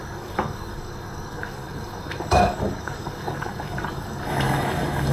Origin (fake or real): fake